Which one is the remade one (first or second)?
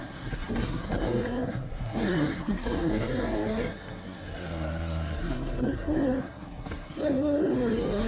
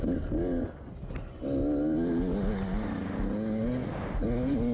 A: first